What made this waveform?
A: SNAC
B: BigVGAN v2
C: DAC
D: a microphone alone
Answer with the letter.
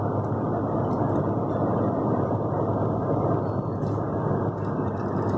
D